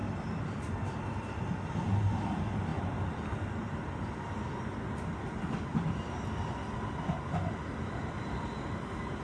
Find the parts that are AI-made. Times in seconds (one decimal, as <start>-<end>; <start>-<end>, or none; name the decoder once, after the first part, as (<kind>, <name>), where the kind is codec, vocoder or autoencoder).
none